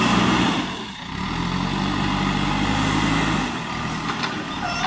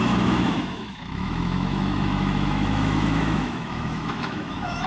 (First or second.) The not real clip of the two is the second